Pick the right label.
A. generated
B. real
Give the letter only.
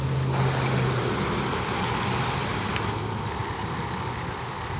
B